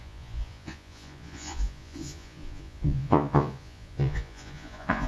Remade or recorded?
remade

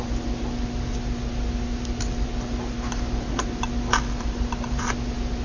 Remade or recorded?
recorded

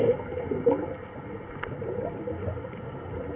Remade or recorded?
recorded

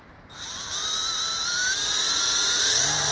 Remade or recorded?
recorded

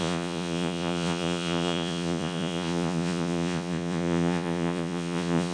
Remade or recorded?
remade